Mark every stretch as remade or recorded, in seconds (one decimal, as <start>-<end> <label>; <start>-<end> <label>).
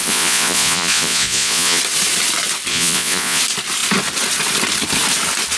0.0-1.8 remade; 1.8-2.7 recorded; 2.7-3.4 remade; 3.4-5.6 recorded